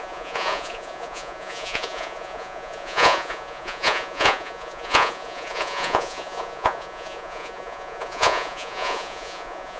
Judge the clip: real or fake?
fake